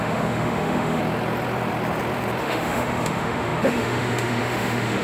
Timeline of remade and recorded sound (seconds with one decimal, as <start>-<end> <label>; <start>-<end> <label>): 0.0-1.0 remade; 1.0-2.4 recorded; 2.4-5.0 remade